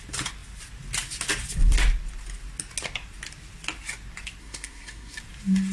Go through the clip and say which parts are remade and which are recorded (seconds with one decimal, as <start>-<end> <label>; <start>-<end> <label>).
0.0-4.4 recorded; 4.4-5.2 remade; 5.2-5.7 recorded